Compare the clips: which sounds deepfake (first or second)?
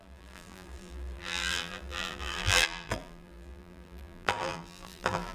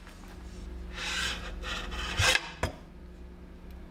first